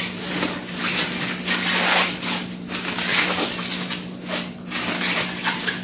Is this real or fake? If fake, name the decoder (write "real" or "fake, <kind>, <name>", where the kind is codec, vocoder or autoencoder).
real